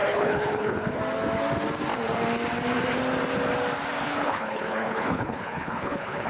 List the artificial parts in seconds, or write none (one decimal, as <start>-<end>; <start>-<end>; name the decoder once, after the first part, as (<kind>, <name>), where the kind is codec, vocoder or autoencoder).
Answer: 0.0-1.0 (codec, HILCodec); 4.0-6.3